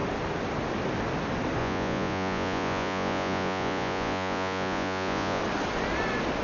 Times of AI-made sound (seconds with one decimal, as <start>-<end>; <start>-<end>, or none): 1.6-5.4